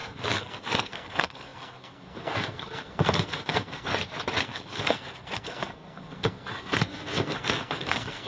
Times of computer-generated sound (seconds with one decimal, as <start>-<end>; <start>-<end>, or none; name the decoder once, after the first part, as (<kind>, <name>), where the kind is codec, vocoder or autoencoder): 0.0-3.9 (codec, SNAC); 4.4-8.3